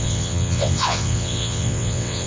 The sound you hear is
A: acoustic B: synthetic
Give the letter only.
B